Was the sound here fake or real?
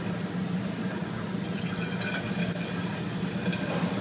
real